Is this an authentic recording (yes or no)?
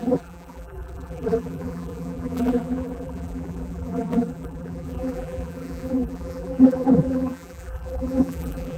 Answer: no